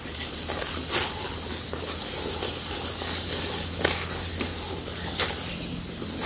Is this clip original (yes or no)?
yes